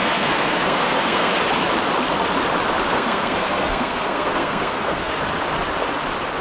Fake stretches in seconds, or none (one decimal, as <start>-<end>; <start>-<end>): 0.0-1.3; 2.9-5.2